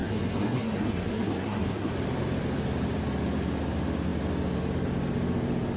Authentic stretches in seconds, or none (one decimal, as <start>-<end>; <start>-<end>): 1.9-5.8